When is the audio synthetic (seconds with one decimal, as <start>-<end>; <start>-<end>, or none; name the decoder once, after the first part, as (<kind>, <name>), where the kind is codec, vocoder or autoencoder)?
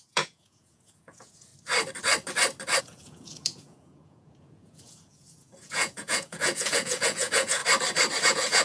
0.0-1.5 (vocoder, Vocos); 2.8-7.6; 8.2-8.6